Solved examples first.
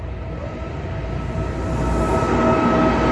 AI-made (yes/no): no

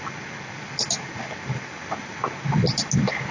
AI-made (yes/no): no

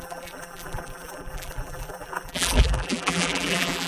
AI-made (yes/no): yes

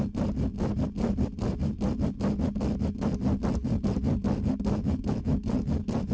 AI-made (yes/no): no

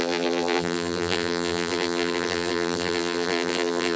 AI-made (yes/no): yes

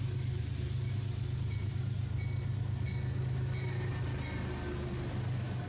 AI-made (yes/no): no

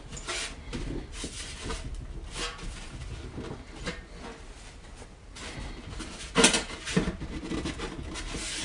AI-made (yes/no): no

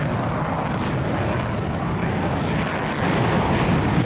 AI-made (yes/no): no